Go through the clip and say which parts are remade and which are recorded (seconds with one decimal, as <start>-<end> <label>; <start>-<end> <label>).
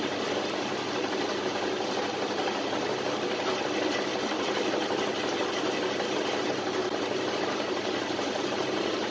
0.0-9.1 remade